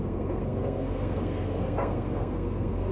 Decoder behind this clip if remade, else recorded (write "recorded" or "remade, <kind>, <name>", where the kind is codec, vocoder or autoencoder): remade, codec, SNAC